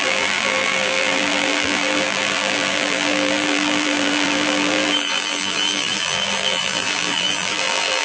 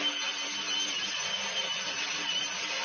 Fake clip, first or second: first